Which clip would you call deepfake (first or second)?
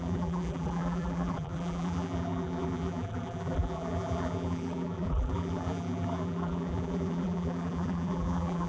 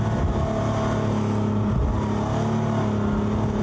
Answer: first